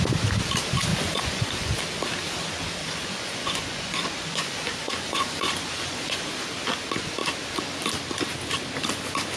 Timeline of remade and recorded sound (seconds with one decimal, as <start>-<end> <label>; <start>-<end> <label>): 0.0-0.9 recorded; 0.9-1.8 remade; 1.8-2.8 recorded; 2.8-6.4 remade; 6.4-9.4 recorded